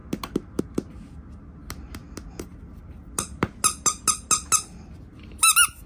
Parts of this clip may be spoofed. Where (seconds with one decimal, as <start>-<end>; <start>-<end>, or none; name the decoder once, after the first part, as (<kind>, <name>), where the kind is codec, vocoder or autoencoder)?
none